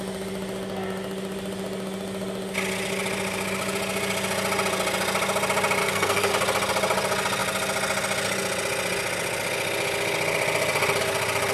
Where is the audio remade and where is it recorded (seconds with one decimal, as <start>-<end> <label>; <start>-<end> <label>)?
0.0-5.8 recorded; 5.8-6.3 remade; 6.3-11.5 recorded